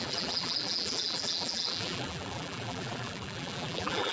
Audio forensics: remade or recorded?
remade